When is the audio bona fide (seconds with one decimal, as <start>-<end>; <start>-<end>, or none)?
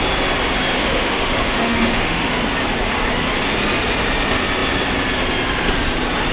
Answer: 0.0-0.8; 2.3-6.3